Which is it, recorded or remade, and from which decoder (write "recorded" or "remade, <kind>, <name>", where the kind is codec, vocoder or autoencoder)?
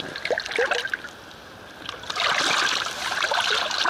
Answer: recorded